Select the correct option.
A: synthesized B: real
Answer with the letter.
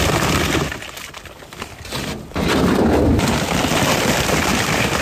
A